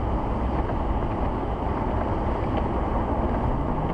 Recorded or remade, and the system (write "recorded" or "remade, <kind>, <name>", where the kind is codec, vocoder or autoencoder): recorded